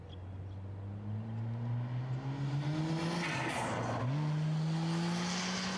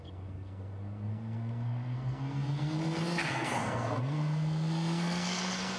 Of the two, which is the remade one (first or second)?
second